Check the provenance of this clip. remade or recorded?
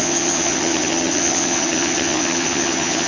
remade